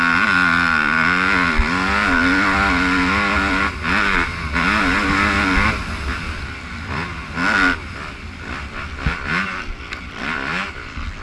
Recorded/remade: recorded